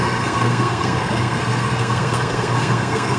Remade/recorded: remade